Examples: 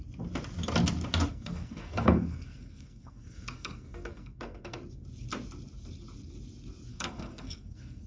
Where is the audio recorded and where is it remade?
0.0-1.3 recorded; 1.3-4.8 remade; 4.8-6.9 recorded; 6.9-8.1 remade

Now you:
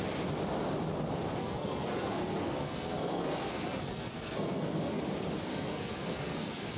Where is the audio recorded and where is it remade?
0.0-1.4 recorded; 1.4-5.0 remade; 5.0-5.5 recorded; 5.5-6.8 remade